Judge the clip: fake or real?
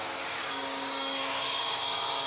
fake